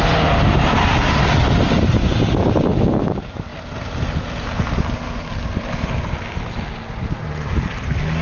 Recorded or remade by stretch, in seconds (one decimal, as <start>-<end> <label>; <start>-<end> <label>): 0.0-8.2 recorded